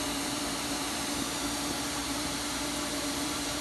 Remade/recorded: remade